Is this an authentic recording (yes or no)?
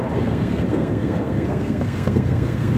no